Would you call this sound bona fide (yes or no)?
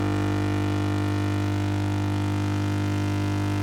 yes